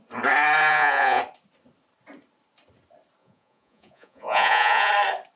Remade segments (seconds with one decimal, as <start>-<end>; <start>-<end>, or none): 0.7-1.2; 3.2-4.9